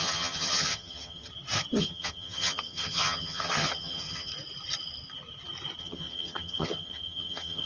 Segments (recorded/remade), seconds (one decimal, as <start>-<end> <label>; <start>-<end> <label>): 0.0-1.3 remade; 1.3-1.8 recorded; 1.8-4.3 remade; 4.3-5.8 recorded; 5.8-7.7 remade